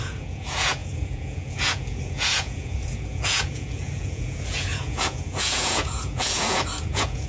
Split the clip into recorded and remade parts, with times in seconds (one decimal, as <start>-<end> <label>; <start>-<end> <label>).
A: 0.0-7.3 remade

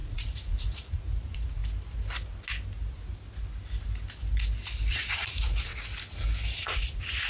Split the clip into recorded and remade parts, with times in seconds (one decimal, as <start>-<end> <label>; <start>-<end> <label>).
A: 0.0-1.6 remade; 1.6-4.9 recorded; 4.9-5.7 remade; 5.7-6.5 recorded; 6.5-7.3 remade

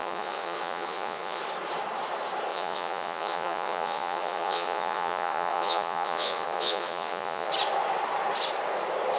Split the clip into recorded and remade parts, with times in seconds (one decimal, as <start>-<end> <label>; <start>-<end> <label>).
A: 0.0-1.4 remade; 1.4-2.5 recorded; 2.5-7.5 remade; 7.5-9.2 recorded

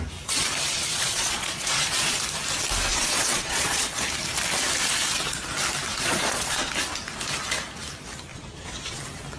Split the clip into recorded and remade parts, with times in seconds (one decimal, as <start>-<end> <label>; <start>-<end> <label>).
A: 0.0-0.7 recorded; 0.7-2.2 remade; 2.2-2.9 recorded; 2.9-4.1 remade; 4.1-5.9 recorded; 5.9-6.7 remade; 6.7-8.3 recorded; 8.3-9.0 remade; 9.0-9.4 recorded

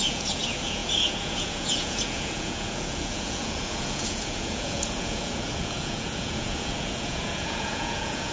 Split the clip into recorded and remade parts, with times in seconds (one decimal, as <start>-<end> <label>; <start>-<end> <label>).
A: 0.0-8.3 remade

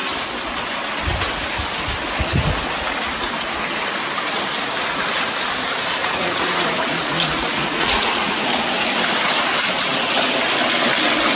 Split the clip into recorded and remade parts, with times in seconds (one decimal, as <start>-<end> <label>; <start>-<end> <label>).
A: 0.0-6.0 recorded; 6.0-8.3 remade; 8.3-11.4 recorded

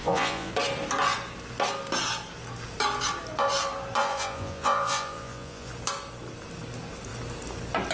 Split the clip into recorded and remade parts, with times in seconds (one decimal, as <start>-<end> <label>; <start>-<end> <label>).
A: 0.0-0.5 remade; 0.5-4.0 recorded; 4.0-5.7 remade; 5.7-7.9 recorded

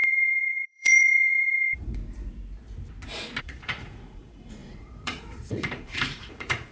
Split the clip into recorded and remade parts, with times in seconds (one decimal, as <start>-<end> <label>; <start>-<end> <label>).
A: 0.0-2.0 remade; 2.0-3.4 recorded; 3.4-6.7 remade